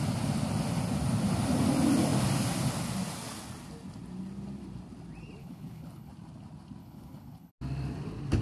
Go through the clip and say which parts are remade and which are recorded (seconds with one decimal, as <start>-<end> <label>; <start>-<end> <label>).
0.0-5.4 recorded; 5.4-6.1 remade; 6.1-6.8 recorded; 6.8-7.5 remade; 7.5-8.4 recorded